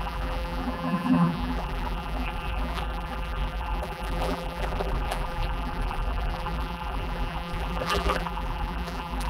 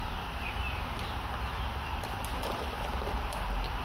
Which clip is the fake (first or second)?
first